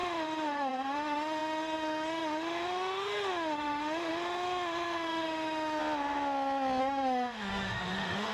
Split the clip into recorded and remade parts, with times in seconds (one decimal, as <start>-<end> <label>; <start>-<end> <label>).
0.0-5.8 remade; 5.8-6.8 recorded; 6.8-8.3 remade